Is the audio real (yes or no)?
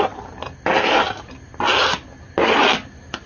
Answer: yes